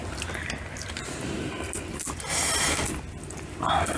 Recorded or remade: recorded